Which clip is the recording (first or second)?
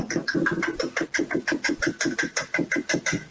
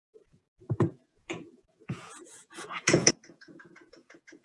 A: first